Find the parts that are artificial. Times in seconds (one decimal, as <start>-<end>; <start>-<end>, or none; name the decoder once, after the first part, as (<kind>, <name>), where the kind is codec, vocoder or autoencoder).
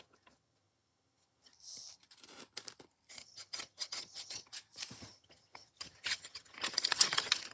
0.0-1.5 (vocoder, HiFi-GAN); 3.1-4.5; 5.0-7.5